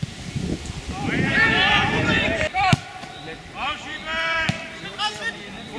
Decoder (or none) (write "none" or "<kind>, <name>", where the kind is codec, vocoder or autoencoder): vocoder, BigVGAN v2